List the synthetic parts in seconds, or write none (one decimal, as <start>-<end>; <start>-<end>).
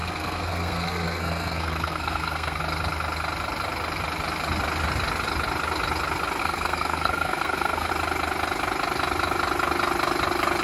0.0-2.6; 6.4-7.9